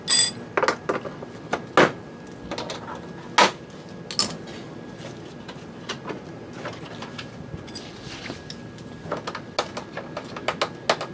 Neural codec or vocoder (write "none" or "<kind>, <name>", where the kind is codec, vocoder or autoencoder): none